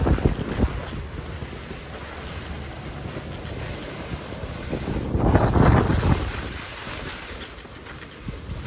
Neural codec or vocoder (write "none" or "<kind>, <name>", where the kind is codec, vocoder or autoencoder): none